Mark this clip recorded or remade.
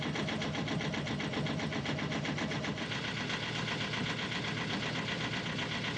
remade